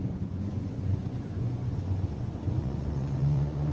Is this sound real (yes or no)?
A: no